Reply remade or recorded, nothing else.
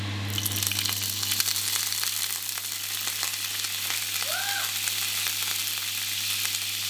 recorded